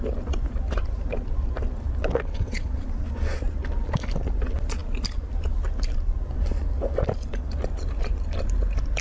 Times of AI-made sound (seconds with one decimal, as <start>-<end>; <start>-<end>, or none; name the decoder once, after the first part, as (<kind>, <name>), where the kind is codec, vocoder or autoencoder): 2.0-2.8 (vocoder, WaveNeXt)